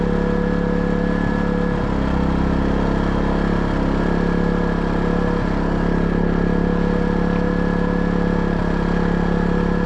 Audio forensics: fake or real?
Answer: real